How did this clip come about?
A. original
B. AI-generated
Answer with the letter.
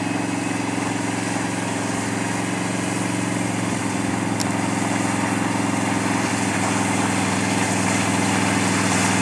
A